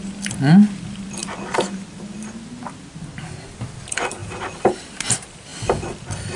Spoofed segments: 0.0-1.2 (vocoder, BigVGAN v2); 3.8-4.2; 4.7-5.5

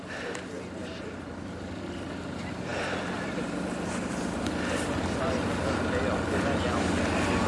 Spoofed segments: 0.8-2.2 (vocoder, BigVGAN v2); 2.7-5.3

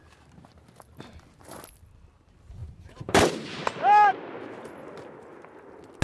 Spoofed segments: 2.6-3.7 (vocoder, BigVGAN v2)

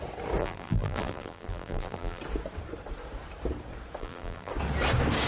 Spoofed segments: 0.4-2.2 (vocoder, BigVGAN v2); 4.0-4.5